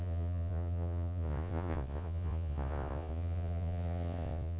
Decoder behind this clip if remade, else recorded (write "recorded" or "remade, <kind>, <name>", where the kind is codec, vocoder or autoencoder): remade, vocoder, Vocos